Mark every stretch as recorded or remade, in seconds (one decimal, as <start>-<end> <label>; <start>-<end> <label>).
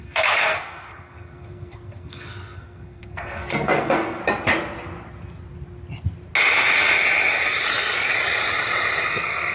0.0-4.2 remade; 4.2-9.1 recorded; 9.1-9.5 remade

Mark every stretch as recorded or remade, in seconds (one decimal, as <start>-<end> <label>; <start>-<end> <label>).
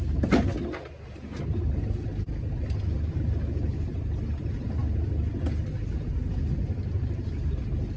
0.0-8.0 recorded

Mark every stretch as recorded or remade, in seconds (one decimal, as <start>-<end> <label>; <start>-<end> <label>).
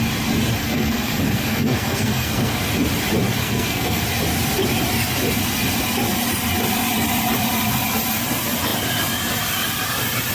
0.0-0.6 recorded; 0.6-2.6 remade; 2.6-3.4 recorded; 3.4-4.0 remade; 4.0-10.3 recorded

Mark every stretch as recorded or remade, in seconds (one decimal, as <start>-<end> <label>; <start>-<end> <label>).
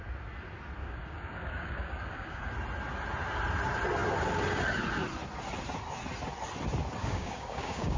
0.0-0.8 recorded; 0.8-2.5 remade; 2.5-7.0 recorded; 7.0-8.0 remade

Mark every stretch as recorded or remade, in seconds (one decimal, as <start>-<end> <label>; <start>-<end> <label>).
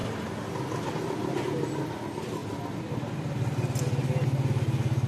0.0-5.1 recorded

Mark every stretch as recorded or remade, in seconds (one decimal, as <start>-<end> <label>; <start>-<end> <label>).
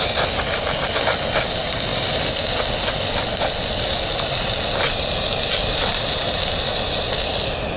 0.0-7.8 recorded